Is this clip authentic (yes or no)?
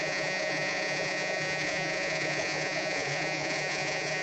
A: no